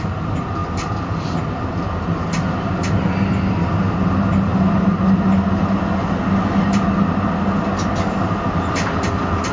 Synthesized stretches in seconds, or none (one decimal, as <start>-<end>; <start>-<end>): none